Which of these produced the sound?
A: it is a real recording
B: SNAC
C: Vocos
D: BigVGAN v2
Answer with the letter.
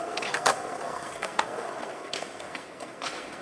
B